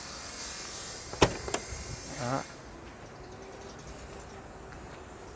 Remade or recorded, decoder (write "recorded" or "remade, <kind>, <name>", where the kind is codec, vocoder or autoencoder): recorded